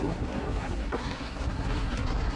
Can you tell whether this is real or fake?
fake